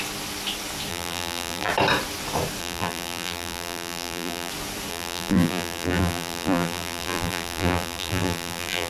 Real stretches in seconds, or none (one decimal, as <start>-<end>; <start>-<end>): 0.0-0.9; 1.7-2.6; 4.5-4.9